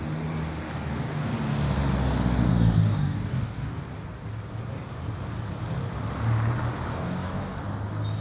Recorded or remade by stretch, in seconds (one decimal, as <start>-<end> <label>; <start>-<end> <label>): 0.0-2.5 recorded; 2.5-3.8 remade; 3.8-6.9 recorded; 6.9-7.6 remade; 7.6-8.2 recorded